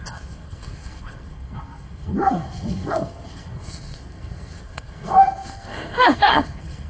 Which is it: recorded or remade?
remade